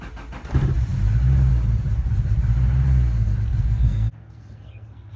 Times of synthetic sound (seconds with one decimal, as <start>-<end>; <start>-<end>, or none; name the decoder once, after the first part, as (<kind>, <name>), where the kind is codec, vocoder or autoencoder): 3.5-5.2 (codec, SNAC)